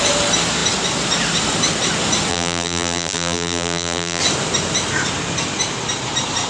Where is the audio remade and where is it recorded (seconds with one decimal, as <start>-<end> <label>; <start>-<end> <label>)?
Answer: 0.0-2.3 recorded; 2.3-4.2 remade; 4.2-6.5 recorded